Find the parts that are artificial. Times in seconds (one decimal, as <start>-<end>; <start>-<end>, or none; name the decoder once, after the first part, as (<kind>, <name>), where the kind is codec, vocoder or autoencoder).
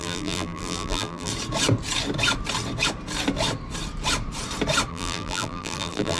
0.0-1.3 (vocoder, BigVGAN v2); 4.9-6.2